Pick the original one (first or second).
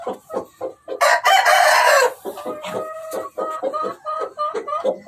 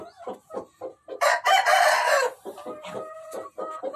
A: first